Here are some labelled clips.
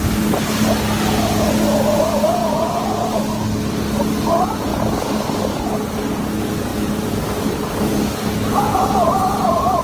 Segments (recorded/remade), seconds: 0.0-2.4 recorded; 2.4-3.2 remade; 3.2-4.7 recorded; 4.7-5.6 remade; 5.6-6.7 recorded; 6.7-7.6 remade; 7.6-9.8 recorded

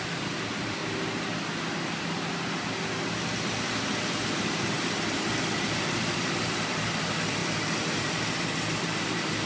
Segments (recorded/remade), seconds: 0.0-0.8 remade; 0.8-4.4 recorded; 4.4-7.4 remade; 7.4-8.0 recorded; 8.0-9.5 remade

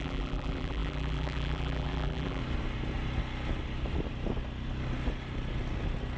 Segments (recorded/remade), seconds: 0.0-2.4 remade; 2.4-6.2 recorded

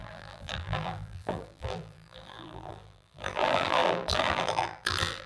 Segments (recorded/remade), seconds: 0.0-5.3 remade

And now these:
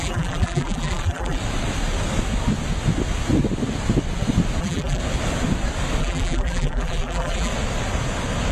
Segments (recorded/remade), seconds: 0.0-1.4 remade; 1.4-4.6 recorded; 4.6-5.0 remade; 5.0-6.0 recorded; 6.0-7.5 remade; 7.5-8.5 recorded

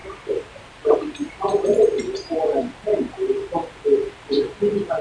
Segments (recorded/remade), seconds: 0.0-5.0 recorded